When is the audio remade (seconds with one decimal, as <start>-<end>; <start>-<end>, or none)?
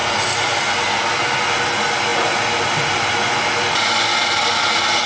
none